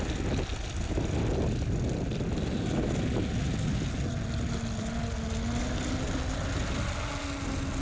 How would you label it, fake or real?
real